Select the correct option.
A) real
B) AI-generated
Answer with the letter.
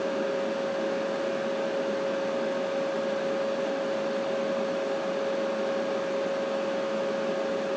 A